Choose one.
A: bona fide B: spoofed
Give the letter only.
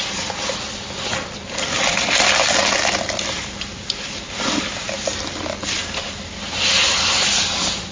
A